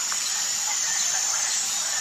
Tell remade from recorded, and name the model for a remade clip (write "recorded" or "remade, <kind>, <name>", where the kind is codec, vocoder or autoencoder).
remade, vocoder, BigVGAN v2